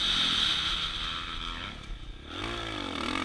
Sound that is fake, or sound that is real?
real